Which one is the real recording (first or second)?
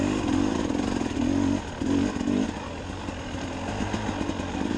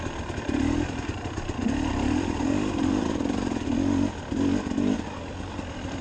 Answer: first